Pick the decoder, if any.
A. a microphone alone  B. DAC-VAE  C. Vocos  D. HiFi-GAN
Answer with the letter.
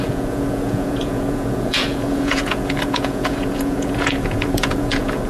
C